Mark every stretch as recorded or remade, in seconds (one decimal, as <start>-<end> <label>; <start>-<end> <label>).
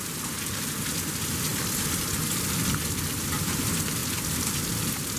0.0-1.5 remade; 1.5-2.3 recorded; 2.3-5.2 remade